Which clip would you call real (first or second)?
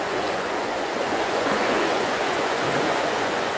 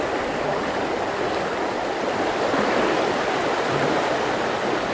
second